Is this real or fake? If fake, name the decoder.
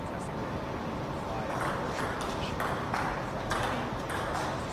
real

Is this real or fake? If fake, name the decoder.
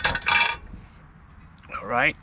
real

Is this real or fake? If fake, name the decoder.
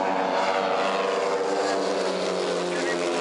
real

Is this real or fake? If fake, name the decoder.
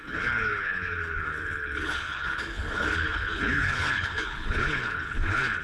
fake, codec, HILCodec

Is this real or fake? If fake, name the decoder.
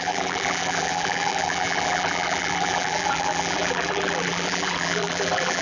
fake, vocoder, BigVGAN v2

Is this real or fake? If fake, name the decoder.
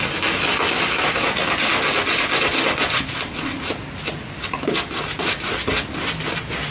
real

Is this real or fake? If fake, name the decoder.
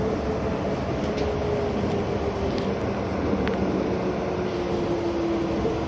real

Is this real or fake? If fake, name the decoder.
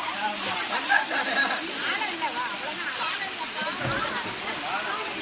real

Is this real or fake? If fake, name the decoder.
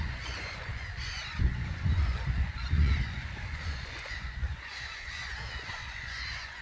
fake, vocoder, Vocos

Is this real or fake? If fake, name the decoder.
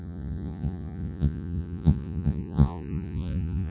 fake, vocoder, Vocos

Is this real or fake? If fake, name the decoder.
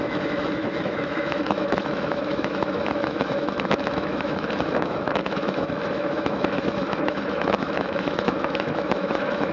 fake, autoencoder, DAC-VAE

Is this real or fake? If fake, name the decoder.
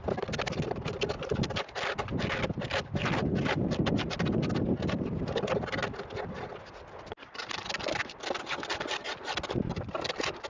real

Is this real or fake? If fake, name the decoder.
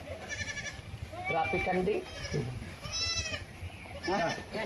real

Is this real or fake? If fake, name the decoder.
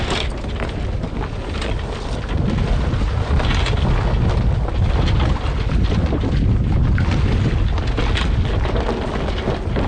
real